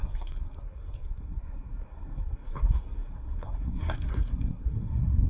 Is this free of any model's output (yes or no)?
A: no